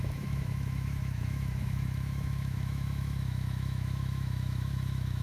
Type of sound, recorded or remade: remade